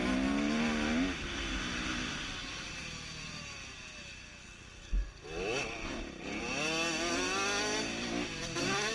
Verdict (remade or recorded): recorded